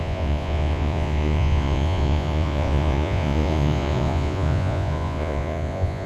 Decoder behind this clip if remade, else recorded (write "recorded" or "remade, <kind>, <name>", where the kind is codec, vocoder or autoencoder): remade, vocoder, Vocos